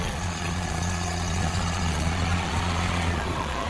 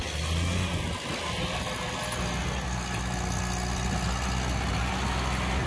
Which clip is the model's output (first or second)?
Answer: first